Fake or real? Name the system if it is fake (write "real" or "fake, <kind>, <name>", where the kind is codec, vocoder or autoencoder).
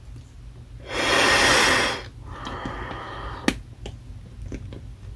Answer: real